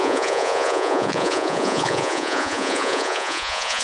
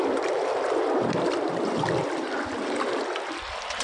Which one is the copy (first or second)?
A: first